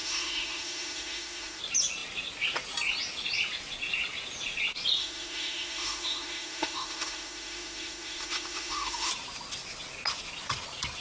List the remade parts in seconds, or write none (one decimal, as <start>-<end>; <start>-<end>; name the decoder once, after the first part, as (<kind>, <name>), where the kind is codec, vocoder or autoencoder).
0.0-1.6 (autoencoder, DAC-VAE); 5.0-9.1